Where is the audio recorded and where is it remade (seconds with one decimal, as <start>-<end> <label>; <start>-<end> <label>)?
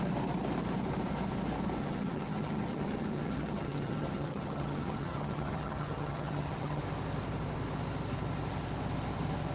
0.0-1.8 recorded; 1.8-6.8 remade; 6.8-9.5 recorded